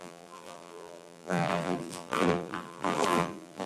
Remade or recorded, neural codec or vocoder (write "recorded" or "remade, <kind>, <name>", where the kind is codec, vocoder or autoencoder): remade, vocoder, BigVGAN v2